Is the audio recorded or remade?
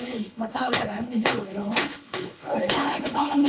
remade